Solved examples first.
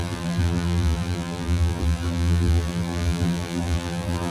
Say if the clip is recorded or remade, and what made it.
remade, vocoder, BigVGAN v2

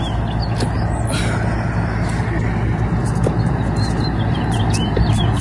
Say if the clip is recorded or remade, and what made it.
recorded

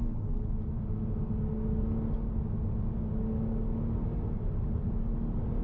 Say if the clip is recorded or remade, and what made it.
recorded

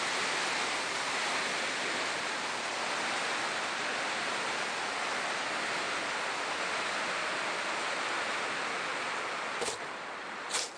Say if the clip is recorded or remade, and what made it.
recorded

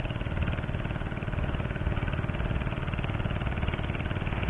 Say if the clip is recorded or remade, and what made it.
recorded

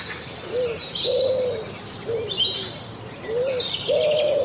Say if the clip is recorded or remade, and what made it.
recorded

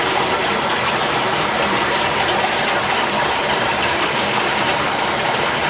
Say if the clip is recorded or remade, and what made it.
remade, vocoder, BigVGAN v2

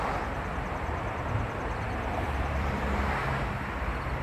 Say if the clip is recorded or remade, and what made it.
remade, vocoder, BigVGAN v2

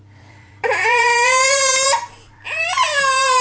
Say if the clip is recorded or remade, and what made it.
remade, vocoder, BigVGAN v2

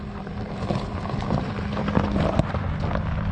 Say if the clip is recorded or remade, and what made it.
recorded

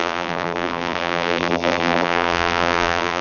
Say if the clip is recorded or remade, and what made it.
remade, vocoder, BigVGAN v2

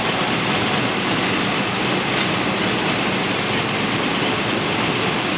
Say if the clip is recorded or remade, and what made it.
recorded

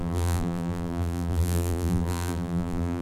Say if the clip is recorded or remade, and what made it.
remade, vocoder, BigVGAN v2